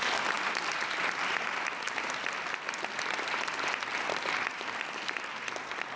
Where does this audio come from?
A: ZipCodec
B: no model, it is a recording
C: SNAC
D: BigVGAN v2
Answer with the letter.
B